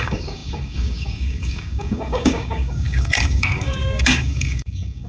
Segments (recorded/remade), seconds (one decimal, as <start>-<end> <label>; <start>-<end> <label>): 0.0-5.1 remade